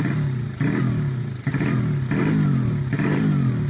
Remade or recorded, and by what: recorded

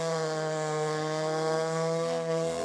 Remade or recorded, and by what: remade, codec, SNAC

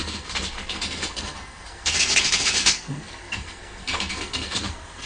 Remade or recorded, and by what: remade, codec, SNAC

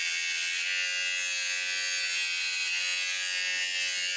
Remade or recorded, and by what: recorded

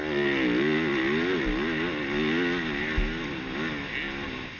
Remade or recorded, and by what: recorded